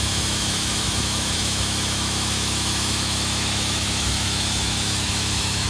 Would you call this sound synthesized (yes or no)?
yes